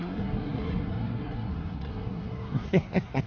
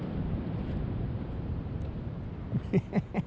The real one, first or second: second